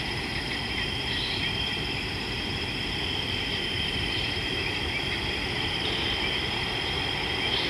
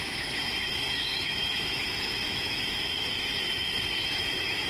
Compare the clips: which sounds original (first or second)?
first